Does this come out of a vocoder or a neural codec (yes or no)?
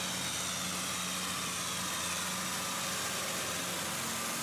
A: no